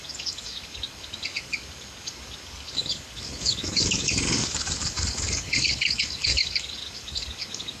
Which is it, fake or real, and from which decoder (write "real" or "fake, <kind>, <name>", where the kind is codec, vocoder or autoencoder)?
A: fake, codec, DAC